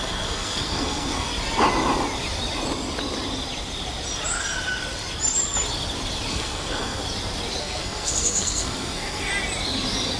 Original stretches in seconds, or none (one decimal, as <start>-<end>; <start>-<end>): 1.3-6.3; 7.0-7.6; 9.3-10.2

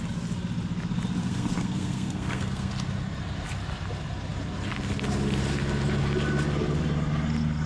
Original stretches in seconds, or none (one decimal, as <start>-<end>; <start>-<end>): 0.0-1.2; 2.7-7.7

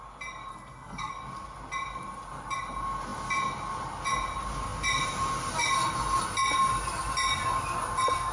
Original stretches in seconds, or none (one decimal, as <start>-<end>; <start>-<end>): 0.0-0.5; 1.1-8.3

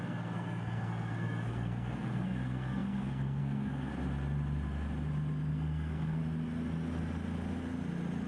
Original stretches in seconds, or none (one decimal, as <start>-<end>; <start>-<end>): 3.9-5.5; 6.2-8.3

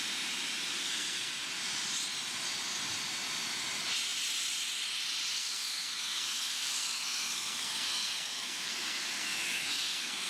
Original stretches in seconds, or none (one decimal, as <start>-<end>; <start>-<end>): 0.0-0.8; 1.3-5.3

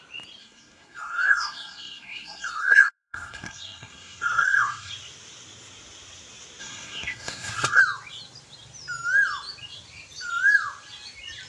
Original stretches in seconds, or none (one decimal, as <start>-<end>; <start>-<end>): 0.0-0.4; 4.9-6.6; 7.8-11.5

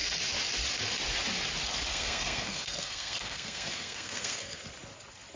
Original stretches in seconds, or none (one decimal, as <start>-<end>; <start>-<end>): 0.0-1.9; 4.7-5.4

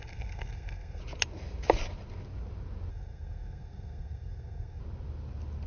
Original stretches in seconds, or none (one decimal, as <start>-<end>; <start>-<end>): 1.0-2.9; 4.8-5.7